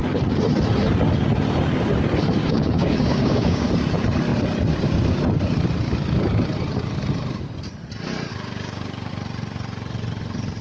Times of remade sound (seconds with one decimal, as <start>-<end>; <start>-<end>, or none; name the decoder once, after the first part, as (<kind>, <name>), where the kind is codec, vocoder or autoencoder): 2.4-3.7 (codec, DAC); 8.3-9.1

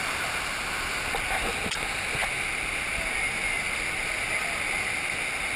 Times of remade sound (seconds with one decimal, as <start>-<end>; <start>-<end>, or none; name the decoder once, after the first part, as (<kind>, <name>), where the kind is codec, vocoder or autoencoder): none

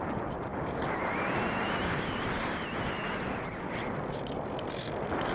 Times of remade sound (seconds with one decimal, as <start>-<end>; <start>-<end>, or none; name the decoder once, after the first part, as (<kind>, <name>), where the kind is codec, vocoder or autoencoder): none

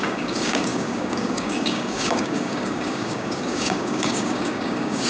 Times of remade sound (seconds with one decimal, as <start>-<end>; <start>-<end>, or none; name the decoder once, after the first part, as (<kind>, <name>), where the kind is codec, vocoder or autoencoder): 0.0-5.1 (codec, DAC)

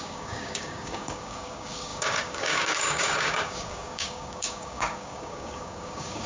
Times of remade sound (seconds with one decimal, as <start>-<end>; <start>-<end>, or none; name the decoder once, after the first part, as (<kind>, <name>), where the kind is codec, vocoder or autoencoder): 0.0-6.3 (codec, DAC)

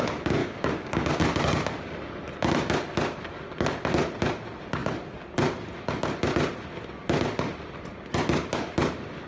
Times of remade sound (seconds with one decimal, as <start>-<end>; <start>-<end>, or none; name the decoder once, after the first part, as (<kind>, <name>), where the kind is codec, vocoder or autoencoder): 0.4-1.2 (codec, DAC)

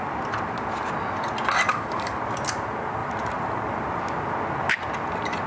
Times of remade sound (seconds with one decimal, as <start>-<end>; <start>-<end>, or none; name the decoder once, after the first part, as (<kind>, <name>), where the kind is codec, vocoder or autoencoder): 1.7-2.2 (codec, DAC)